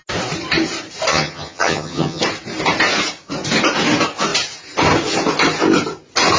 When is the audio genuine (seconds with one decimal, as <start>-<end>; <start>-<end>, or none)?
0.0-1.1; 2.2-6.4